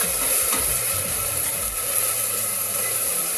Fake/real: fake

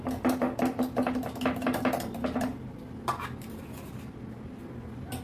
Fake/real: real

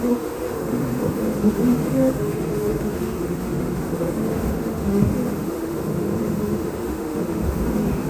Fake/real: fake